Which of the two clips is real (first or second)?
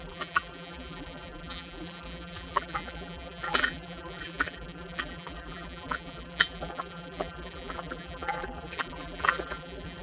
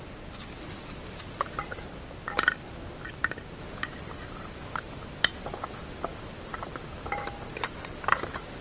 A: second